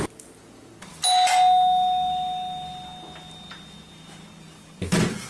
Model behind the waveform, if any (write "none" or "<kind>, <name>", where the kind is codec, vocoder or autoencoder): none